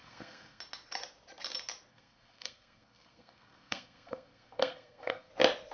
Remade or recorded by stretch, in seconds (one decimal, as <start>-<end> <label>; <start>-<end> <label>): 0.0-0.6 remade; 0.6-1.9 recorded; 1.9-5.3 remade; 5.3-5.7 recorded